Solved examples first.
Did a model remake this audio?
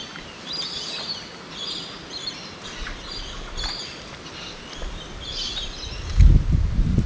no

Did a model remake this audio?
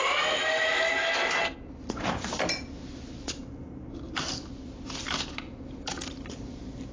no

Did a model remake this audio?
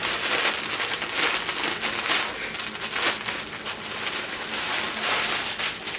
no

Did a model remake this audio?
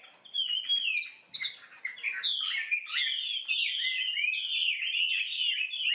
no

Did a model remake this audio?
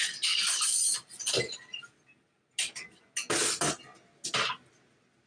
no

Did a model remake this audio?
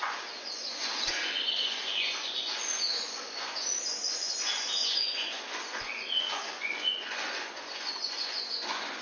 yes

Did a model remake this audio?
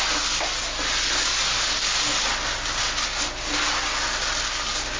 no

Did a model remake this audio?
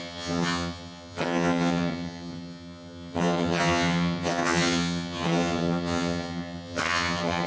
yes